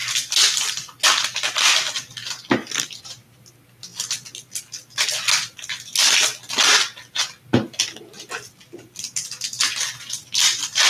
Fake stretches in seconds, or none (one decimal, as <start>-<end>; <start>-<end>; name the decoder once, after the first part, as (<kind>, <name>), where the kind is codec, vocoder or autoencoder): none

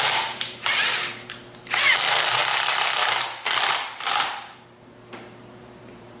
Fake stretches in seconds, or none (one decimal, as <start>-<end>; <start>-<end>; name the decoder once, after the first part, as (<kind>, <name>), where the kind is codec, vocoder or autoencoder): 0.0-2.4 (vocoder, BigVGAN v2); 3.5-6.2

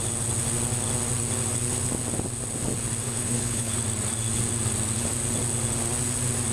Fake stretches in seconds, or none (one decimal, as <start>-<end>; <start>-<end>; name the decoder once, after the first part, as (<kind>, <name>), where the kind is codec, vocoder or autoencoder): 3.0-3.8 (codec, HILCodec)

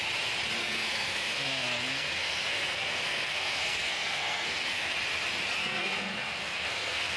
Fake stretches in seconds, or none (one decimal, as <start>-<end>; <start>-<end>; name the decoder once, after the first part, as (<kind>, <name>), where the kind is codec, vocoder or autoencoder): 0.6-4.9 (codec, SNAC); 5.6-7.2

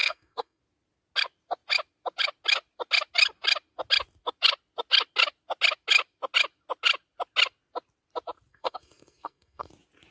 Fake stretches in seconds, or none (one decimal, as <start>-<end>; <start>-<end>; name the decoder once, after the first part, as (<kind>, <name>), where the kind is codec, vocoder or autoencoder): 0.0-0.6 (codec, SNAC); 8.5-9.7

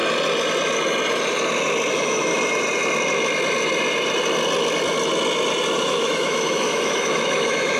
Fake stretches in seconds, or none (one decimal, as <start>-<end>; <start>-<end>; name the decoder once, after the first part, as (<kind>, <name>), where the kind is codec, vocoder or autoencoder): 1.9-2.3 (autoencoder, DAC-VAE); 5.8-7.8

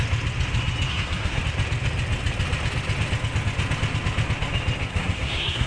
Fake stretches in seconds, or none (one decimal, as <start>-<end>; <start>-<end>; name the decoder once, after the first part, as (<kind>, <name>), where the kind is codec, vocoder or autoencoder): 0.9-1.4 (codec, SNAC); 4.8-5.7

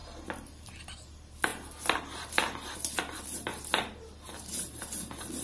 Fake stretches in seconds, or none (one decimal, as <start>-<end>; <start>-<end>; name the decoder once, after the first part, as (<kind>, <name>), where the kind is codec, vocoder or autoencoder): none